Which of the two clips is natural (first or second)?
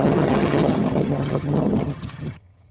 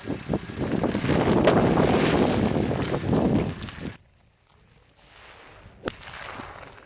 second